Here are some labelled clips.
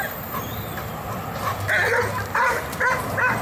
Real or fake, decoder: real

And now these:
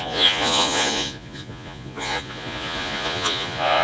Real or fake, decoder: fake, vocoder, Vocos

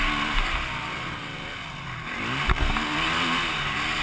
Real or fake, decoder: real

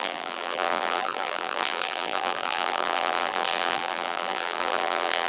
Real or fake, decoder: fake, vocoder, BigVGAN v2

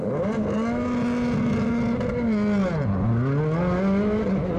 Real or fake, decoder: real